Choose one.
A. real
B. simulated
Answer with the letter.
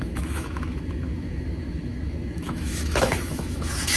B